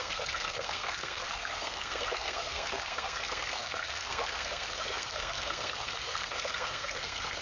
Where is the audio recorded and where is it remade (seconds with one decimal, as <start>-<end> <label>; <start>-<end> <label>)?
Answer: 0.0-7.4 remade